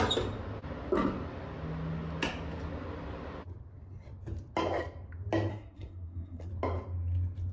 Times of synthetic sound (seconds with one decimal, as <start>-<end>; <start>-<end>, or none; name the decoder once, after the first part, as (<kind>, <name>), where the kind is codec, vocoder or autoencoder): 5.5-6.5 (codec, SNAC)